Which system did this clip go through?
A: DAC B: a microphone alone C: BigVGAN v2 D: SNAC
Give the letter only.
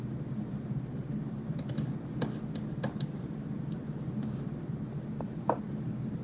B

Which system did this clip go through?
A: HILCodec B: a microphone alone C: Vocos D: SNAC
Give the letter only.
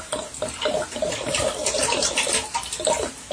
B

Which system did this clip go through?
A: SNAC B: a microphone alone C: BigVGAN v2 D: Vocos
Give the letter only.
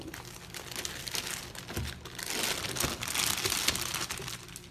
B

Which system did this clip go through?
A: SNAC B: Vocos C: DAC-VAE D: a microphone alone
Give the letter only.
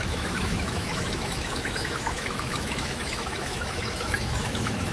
C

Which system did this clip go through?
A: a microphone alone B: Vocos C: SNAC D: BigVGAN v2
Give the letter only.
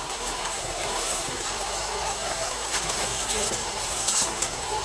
C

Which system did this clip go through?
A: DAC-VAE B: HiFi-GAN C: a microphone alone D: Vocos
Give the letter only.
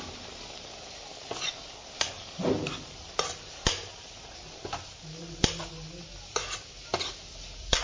C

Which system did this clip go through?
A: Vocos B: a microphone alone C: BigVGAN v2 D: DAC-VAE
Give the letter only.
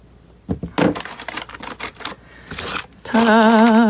B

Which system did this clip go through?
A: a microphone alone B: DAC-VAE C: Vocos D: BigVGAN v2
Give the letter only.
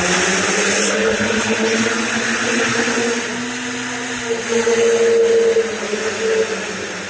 A